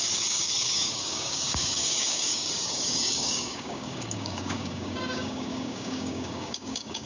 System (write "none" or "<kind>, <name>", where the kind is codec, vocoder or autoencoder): codec, DAC